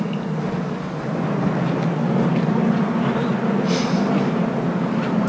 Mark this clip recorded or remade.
recorded